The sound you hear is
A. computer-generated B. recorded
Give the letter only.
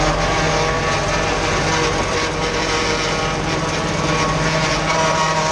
B